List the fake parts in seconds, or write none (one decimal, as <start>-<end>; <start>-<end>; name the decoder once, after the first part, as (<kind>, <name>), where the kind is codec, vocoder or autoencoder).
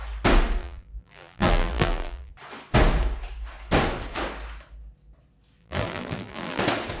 0.6-2.3 (vocoder, BigVGAN v2); 5.6-6.6